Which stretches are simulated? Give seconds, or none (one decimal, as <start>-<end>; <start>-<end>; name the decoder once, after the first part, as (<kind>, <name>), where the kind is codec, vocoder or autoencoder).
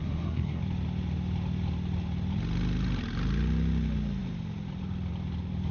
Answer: 0.0-0.6 (codec, SNAC)